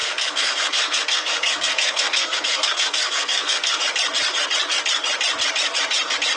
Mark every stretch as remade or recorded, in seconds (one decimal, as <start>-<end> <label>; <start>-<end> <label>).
0.0-3.8 remade; 3.8-6.4 recorded